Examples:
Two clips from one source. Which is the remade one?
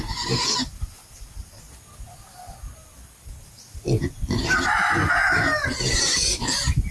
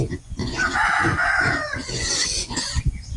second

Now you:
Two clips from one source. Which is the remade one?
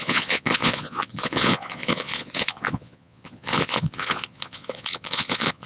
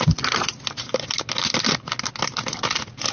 first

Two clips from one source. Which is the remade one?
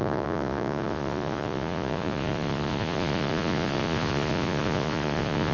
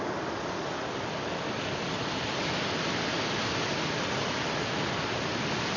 first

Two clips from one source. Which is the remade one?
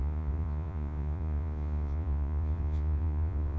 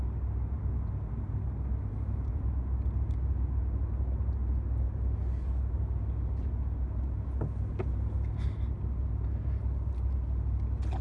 first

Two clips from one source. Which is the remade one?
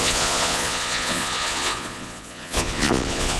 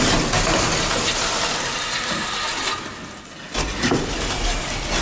first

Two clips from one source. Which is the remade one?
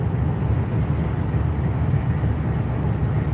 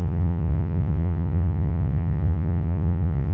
second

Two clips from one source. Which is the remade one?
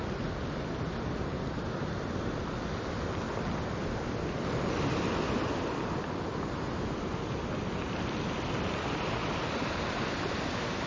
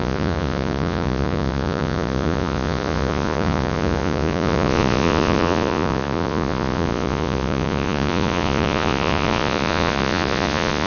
second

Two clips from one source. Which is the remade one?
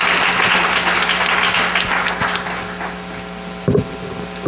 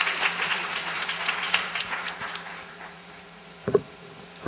second